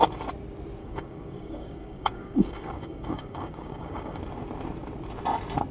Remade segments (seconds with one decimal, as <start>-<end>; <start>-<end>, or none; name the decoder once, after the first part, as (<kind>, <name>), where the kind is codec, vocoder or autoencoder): 0.8-4.2 (codec, DAC)